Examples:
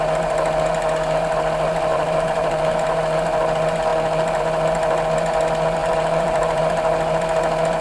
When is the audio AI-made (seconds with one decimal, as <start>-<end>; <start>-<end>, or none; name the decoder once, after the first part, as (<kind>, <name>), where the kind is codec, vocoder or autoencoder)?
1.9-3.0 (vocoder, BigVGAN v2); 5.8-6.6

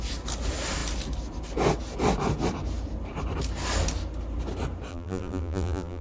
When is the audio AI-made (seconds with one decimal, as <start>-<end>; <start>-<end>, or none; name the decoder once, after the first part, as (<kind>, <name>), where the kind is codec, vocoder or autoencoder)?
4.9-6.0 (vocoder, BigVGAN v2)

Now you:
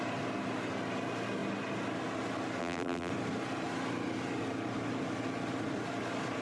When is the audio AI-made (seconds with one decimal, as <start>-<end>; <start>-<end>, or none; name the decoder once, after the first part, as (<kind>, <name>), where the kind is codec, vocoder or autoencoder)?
2.6-3.1 (vocoder, BigVGAN v2)

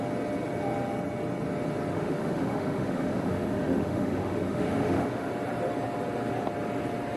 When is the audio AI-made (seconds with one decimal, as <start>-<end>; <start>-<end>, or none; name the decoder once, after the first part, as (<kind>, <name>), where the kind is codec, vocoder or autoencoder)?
1.9-5.3 (autoencoder, DAC-VAE)

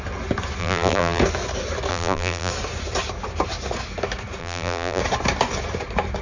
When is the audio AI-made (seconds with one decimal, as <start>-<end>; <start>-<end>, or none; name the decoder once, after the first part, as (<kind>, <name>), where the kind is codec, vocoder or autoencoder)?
0.6-1.2 (vocoder, BigVGAN v2); 1.9-2.5; 4.4-5.0

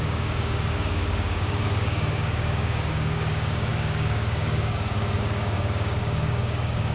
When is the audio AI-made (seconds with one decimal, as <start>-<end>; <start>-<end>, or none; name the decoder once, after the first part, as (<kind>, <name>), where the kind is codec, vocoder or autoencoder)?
0.0-6.9 (codec, DAC)